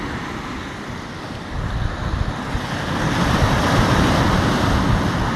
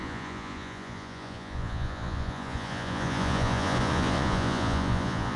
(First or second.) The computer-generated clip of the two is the second